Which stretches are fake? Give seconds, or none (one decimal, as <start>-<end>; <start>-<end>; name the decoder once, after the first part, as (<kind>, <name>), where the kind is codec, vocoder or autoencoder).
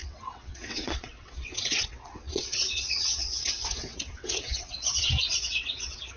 0.0-6.2 (vocoder, WaveNeXt)